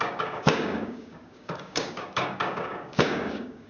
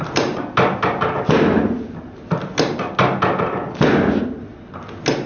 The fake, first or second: first